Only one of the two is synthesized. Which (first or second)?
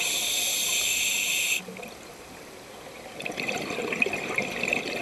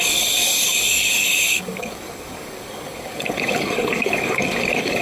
second